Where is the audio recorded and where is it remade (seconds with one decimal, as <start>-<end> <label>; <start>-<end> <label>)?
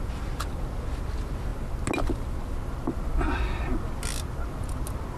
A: 0.0-5.2 recorded